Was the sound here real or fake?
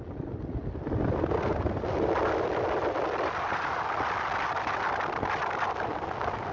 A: real